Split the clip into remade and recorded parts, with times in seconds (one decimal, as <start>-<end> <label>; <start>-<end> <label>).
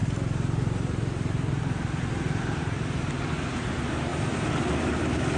0.0-5.4 remade